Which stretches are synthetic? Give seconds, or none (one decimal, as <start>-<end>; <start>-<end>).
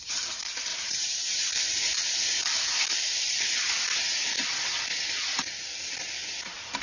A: 0.7-3.4